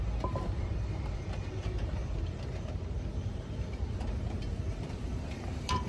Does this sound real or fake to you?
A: fake